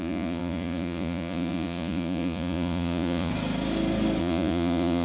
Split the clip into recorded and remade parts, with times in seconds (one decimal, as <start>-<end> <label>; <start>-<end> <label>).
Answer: 0.0-3.3 remade; 3.3-4.2 recorded; 4.2-5.0 remade